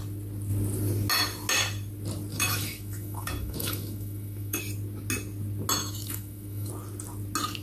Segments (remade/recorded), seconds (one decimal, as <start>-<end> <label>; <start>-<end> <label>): 0.0-2.3 recorded; 2.3-4.6 remade; 4.6-5.8 recorded; 5.8-6.7 remade; 6.7-7.6 recorded